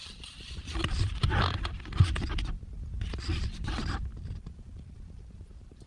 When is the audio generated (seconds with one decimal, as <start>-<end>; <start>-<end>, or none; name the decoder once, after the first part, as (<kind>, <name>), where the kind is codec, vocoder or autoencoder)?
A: none